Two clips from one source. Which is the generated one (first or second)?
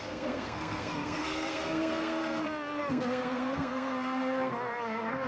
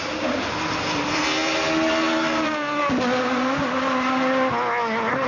first